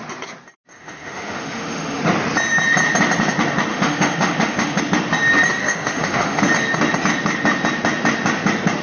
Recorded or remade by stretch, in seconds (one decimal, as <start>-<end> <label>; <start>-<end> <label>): 0.0-0.7 recorded; 0.7-2.0 remade; 2.0-3.7 recorded; 3.7-4.8 remade; 4.8-5.6 recorded; 5.6-6.4 remade; 6.4-8.8 recorded